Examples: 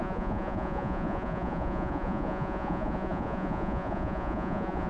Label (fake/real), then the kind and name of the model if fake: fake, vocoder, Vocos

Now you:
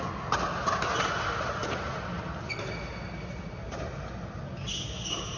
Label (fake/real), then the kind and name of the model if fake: real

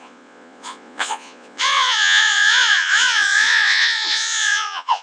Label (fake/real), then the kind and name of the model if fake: fake, vocoder, Vocos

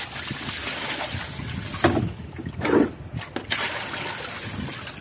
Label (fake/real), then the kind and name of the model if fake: real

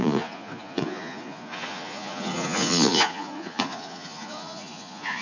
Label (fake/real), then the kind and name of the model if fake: fake, vocoder, Vocos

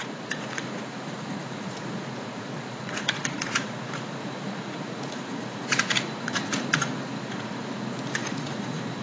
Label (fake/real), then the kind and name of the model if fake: fake, vocoder, Vocos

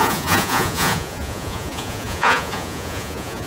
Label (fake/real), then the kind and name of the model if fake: fake, vocoder, Vocos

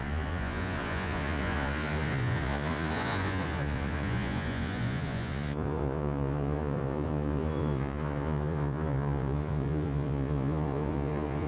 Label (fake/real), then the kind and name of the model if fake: fake, vocoder, Vocos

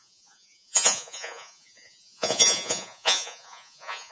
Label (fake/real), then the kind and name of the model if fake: fake, vocoder, Vocos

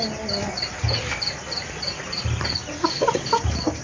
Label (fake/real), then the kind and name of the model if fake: real